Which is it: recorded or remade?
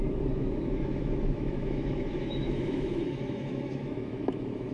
remade